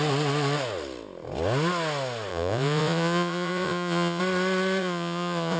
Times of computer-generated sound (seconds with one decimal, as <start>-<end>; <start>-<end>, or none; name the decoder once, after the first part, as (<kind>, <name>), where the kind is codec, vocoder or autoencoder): 2.3-4.2 (vocoder, Vocos); 4.8-5.6